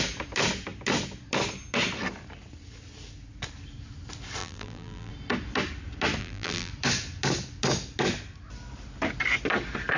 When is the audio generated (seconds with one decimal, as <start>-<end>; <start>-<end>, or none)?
4.4-5.1; 6.2-6.7